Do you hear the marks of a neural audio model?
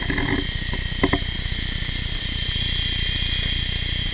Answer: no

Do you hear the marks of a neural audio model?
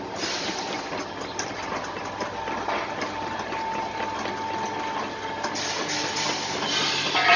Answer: no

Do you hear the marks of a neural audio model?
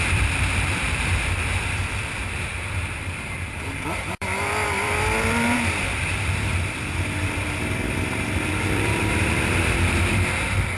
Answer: yes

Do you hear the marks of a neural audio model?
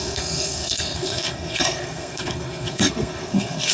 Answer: yes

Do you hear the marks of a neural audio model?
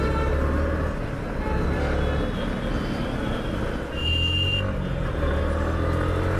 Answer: no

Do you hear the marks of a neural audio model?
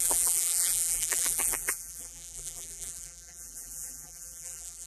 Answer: yes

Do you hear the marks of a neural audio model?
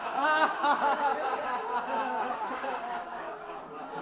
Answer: yes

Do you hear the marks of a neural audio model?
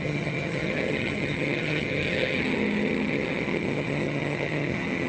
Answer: yes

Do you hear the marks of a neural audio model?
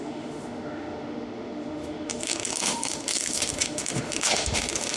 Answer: yes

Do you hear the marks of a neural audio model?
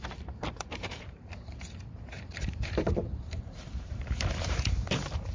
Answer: yes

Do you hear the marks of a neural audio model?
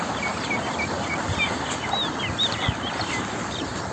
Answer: no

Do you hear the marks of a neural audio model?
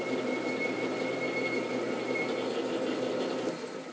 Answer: no